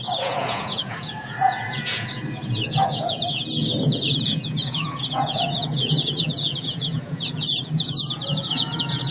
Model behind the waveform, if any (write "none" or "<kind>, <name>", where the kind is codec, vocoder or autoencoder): vocoder, Vocos